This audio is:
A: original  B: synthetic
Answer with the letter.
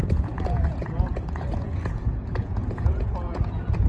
B